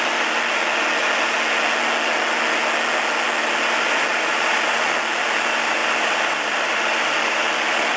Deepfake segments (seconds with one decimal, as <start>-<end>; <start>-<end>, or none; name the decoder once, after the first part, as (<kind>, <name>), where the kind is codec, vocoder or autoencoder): 5.8-6.7 (vocoder, BigVGAN v2)

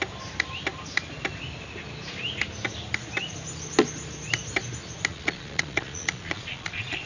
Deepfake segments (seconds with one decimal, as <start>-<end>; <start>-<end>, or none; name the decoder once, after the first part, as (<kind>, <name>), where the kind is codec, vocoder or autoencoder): 5.1-7.1 (vocoder, Vocos)